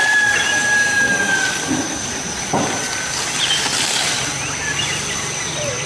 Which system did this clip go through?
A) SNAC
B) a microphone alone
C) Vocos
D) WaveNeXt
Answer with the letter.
B